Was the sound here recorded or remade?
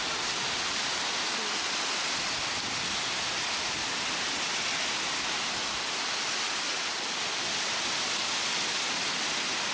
recorded